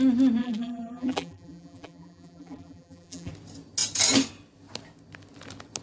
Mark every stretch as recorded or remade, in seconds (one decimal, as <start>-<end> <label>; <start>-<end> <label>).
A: 0.0-0.4 recorded; 0.4-3.3 remade; 3.3-5.8 recorded